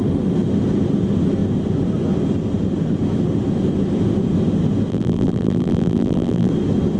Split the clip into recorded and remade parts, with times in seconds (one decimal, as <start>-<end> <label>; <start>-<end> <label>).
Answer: 0.0-4.9 recorded; 4.9-6.5 remade; 6.5-7.0 recorded

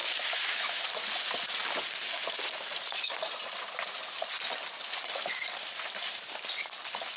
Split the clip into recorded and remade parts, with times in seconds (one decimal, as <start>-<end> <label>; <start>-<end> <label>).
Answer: 0.0-0.8 remade; 0.8-7.2 recorded

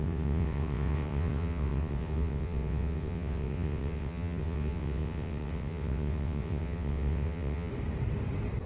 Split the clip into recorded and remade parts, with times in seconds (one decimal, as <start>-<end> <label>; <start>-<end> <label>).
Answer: 0.0-7.7 remade; 7.7-8.7 recorded